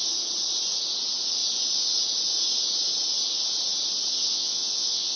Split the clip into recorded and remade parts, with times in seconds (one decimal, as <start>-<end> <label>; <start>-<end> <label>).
0.0-4.3 recorded; 4.3-5.2 remade